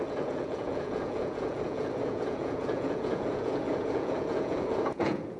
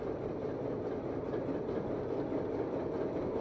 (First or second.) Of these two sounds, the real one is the second